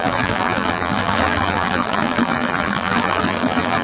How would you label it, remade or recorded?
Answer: remade